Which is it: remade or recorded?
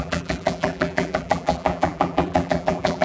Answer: remade